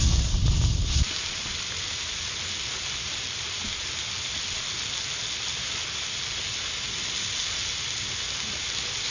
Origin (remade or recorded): recorded